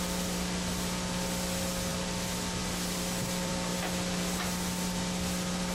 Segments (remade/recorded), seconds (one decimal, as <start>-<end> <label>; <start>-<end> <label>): 0.0-3.7 remade; 3.7-4.4 recorded; 4.4-5.7 remade